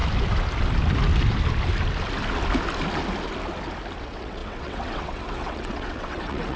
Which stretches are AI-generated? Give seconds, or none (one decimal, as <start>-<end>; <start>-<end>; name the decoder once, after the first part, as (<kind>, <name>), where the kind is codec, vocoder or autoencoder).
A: 4.0-6.6 (vocoder, WaveNeXt)